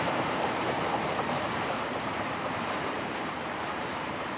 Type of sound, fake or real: fake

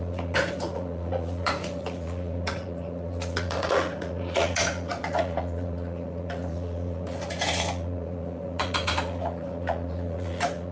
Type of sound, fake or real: fake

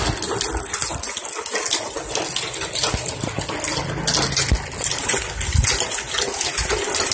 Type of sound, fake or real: real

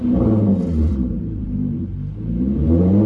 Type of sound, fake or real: fake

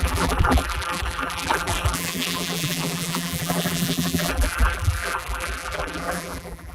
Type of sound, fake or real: fake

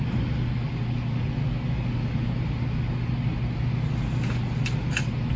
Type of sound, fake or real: real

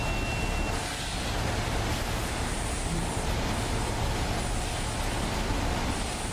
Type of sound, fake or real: real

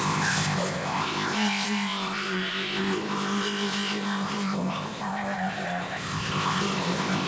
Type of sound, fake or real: fake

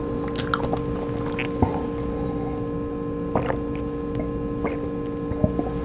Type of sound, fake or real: real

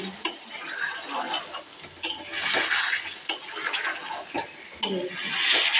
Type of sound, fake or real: real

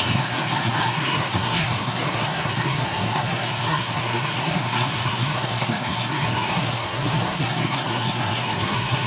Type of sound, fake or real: fake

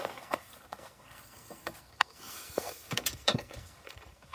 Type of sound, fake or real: fake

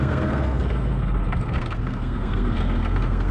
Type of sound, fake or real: fake